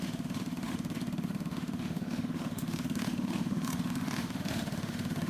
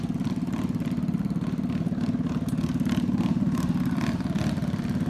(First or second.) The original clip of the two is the second